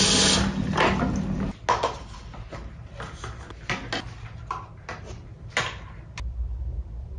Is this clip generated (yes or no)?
no